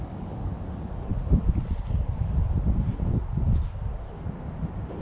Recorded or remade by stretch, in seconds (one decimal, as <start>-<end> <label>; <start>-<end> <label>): 0.0-5.0 recorded